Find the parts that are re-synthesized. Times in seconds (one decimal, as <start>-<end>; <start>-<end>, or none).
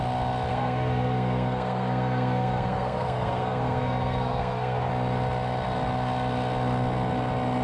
0.5-4.9